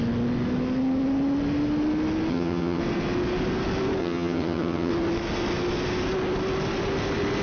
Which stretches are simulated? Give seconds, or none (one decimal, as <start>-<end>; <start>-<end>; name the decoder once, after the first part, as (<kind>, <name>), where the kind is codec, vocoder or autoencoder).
2.3-2.8 (vocoder, HiFi-GAN); 4.0-4.9